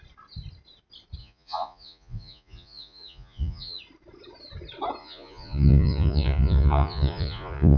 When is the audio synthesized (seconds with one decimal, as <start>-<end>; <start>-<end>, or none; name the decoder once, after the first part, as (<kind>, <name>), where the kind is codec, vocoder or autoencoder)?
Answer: 1.2-3.8 (vocoder, Vocos); 5.0-7.8